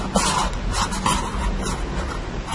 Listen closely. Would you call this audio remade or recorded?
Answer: recorded